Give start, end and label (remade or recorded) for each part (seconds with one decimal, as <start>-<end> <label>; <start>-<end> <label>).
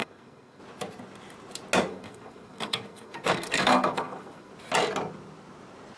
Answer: 0.0-0.6 remade; 0.6-1.9 recorded; 1.9-4.5 remade; 4.5-6.0 recorded